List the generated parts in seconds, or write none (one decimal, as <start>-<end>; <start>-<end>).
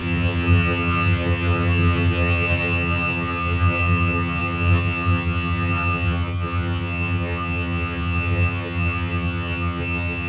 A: 0.0-10.3